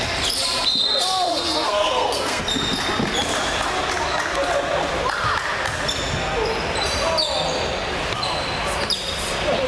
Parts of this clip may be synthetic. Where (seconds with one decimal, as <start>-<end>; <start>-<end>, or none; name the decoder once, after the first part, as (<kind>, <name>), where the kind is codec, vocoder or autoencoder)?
1.3-2.4 (codec, SNAC)